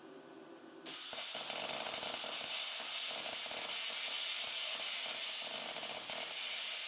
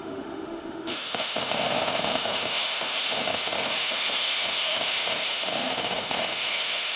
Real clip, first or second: first